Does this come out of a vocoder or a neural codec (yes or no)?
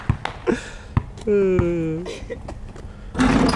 no